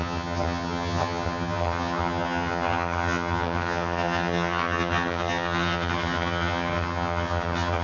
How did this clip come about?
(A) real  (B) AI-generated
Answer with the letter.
B